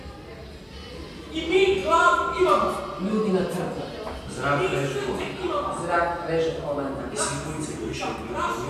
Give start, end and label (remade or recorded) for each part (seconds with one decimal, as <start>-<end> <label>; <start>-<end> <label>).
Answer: 0.0-8.7 recorded